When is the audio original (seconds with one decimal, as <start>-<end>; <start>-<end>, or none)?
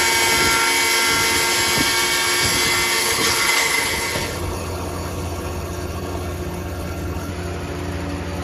0.0-3.0; 7.3-8.4